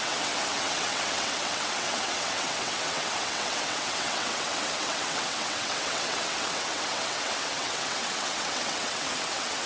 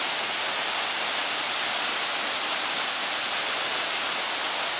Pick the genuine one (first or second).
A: second